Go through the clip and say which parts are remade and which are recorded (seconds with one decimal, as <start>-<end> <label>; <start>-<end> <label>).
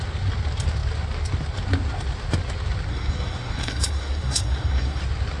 0.0-2.9 recorded; 2.9-5.0 remade; 5.0-5.4 recorded